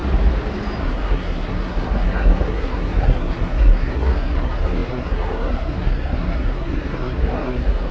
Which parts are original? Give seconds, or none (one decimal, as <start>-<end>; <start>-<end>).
0.0-0.8